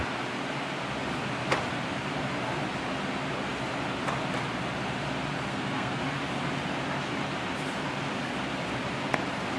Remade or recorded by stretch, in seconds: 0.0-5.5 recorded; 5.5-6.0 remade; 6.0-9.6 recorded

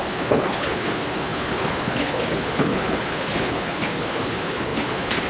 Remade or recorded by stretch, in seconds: 0.0-5.3 remade